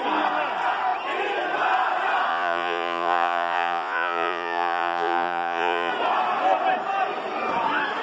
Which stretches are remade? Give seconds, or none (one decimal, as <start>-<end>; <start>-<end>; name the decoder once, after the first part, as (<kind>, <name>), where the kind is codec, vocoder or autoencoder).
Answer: 2.3-5.9 (vocoder, Vocos)